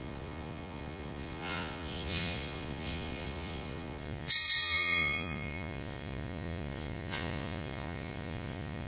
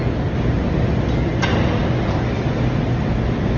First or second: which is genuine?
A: second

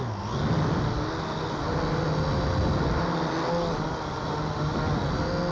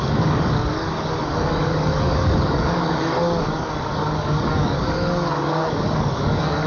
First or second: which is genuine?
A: first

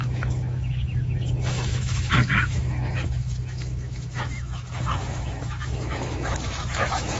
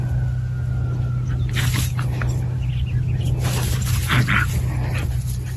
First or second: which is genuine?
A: second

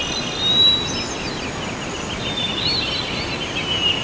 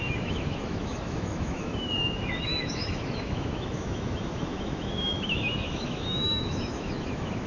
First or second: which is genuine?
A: first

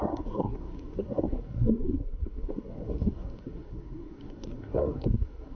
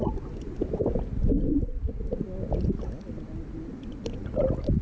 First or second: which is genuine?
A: second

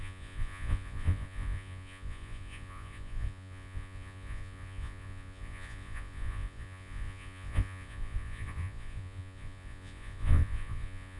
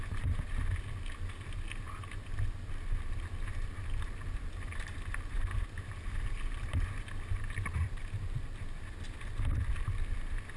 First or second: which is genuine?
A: second